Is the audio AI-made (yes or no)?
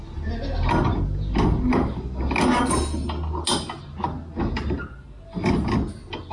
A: no